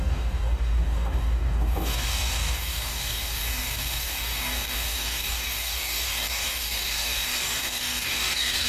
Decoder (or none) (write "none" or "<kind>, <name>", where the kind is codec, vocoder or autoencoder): codec, DAC